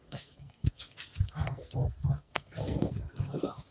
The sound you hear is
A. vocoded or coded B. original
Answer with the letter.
A